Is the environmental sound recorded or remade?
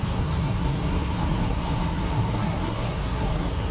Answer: remade